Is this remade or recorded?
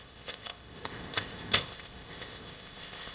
remade